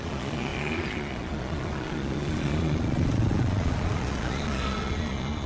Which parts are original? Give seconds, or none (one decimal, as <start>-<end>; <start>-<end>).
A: none